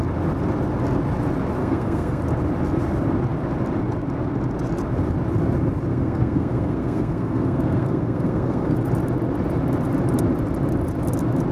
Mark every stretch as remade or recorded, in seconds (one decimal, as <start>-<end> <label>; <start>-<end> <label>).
0.0-1.6 recorded; 1.6-2.2 remade; 2.2-5.9 recorded; 5.9-8.9 remade; 8.9-11.5 recorded